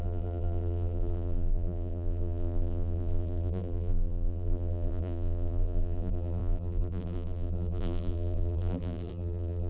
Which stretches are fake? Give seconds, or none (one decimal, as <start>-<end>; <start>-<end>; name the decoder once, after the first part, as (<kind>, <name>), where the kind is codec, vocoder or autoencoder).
0.0-9.7 (vocoder, BigVGAN v2)